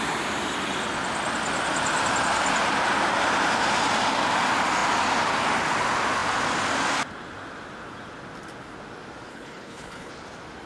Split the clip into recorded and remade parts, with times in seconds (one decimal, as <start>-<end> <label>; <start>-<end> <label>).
0.0-9.3 recorded; 9.3-10.1 remade; 10.1-10.7 recorded